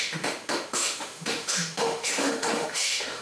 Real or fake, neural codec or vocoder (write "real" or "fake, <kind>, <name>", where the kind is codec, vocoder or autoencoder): fake, autoencoder, DAC-VAE